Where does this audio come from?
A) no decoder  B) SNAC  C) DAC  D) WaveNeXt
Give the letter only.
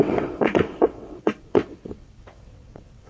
D